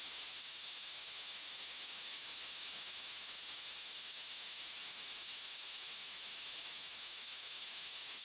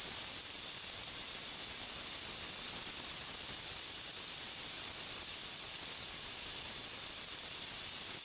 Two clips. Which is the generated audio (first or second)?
first